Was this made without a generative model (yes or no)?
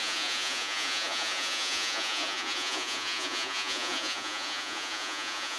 no